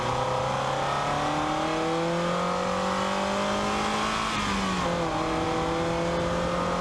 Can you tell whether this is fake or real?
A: real